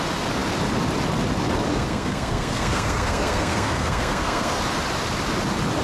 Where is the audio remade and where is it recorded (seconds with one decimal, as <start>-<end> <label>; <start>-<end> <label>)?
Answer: 0.0-1.7 recorded; 1.7-4.6 remade; 4.6-5.8 recorded